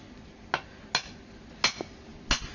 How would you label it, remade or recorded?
recorded